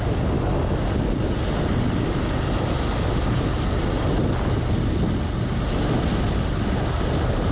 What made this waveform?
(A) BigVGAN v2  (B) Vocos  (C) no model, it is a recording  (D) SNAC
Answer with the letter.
C